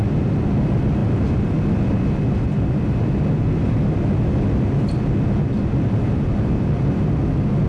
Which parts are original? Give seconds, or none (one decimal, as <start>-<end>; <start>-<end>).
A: 0.0-7.7

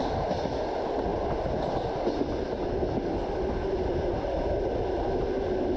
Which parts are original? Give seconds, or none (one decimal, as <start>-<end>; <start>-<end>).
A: 0.0-5.8

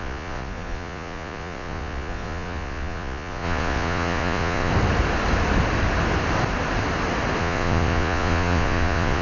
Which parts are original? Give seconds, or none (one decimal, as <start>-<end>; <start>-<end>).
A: 4.7-7.4

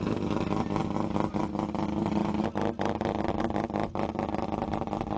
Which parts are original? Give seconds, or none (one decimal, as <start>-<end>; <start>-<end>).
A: 0.0-5.2